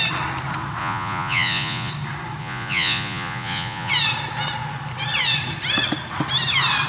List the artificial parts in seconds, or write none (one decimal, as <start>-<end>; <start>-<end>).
0.8-1.9; 2.4-3.9